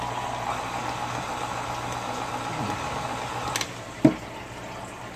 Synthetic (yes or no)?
no